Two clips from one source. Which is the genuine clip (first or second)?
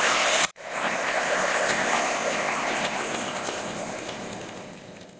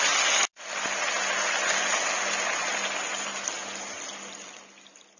second